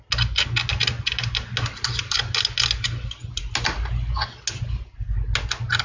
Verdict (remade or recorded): recorded